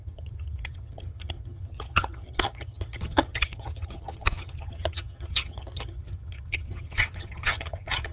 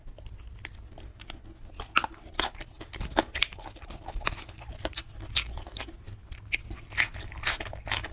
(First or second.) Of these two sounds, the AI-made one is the first